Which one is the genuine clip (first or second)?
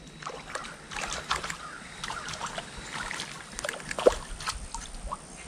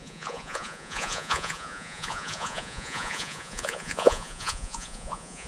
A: first